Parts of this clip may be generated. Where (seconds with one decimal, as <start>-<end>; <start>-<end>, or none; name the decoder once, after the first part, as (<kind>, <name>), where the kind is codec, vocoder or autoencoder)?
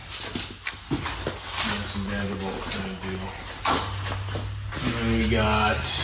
none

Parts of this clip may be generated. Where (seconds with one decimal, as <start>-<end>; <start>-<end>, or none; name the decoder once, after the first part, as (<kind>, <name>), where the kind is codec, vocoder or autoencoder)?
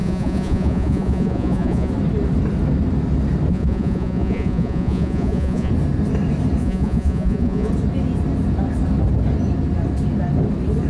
0.0-1.9 (vocoder, Vocos); 3.5-5.7; 6.6-7.7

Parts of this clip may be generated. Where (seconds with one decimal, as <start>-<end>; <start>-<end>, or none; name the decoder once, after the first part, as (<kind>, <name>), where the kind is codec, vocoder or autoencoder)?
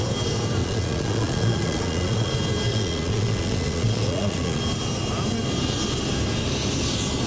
0.6-2.3 (vocoder, Vocos); 2.7-4.6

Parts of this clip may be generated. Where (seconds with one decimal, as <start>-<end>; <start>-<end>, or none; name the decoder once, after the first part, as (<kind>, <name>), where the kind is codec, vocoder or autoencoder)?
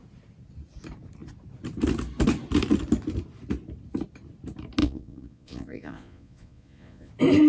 4.8-7.1 (vocoder, Vocos)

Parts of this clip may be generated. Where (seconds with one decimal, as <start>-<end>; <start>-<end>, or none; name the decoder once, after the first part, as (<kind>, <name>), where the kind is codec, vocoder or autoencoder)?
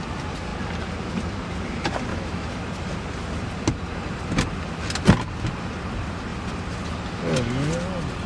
2.1-2.6 (autoencoder, DAC-VAE)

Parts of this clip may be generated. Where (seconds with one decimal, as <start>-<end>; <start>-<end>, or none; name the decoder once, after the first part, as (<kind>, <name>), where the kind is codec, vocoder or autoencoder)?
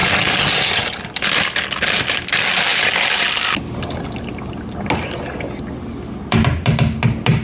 none